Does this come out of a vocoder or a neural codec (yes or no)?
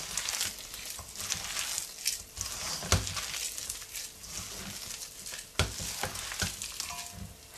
no